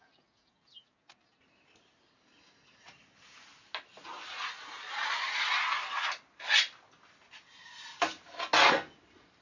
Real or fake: real